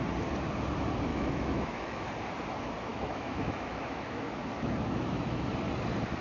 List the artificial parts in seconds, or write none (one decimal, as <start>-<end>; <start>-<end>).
1.1-2.1; 2.9-5.5